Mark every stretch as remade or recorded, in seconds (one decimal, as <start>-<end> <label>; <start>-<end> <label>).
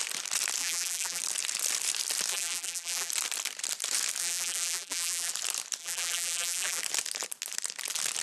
0.0-0.6 recorded; 0.6-1.2 remade; 1.2-2.3 recorded; 2.3-3.1 remade; 3.1-4.2 recorded; 4.2-5.3 remade; 5.3-5.8 recorded; 5.8-6.8 remade; 6.8-8.2 recorded